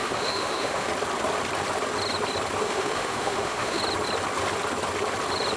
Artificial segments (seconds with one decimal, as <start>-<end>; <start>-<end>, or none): 0.0-0.9; 2.6-3.8